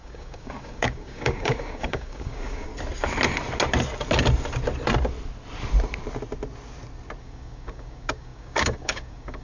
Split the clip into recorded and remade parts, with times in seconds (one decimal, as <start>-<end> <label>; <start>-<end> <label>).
0.0-2.7 remade; 2.7-7.2 recorded; 7.2-9.4 remade